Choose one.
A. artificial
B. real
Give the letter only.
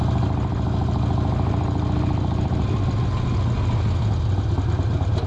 B